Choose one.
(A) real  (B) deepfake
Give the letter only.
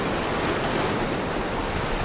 A